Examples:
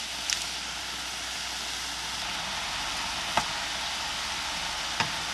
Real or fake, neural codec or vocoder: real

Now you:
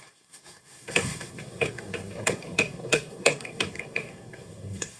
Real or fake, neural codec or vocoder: fake, codec, SNAC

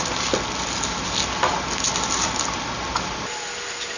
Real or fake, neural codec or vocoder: real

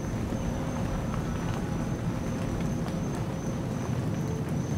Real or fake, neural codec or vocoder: real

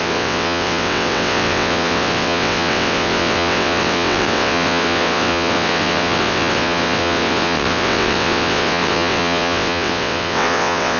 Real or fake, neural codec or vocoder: fake, vocoder, WaveNeXt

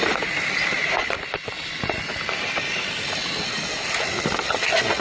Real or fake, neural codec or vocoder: real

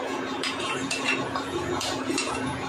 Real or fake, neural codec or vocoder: fake, vocoder, Vocos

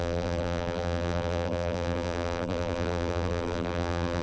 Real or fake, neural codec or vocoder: fake, vocoder, BigVGAN v2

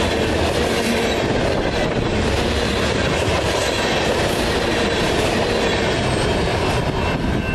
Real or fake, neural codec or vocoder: real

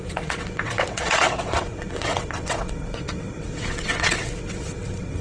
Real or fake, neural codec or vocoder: fake, vocoder, WaveNeXt